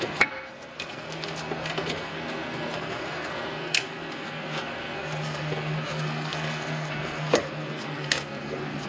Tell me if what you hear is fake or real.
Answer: fake